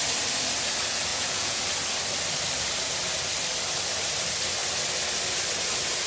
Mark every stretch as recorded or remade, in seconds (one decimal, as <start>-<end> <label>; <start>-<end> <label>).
0.0-1.1 recorded; 1.1-1.6 remade; 1.6-6.1 recorded